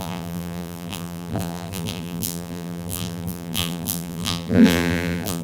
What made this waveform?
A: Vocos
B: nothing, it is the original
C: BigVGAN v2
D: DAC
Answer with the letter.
C